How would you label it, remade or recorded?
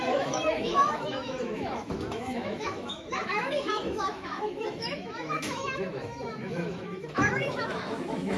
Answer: remade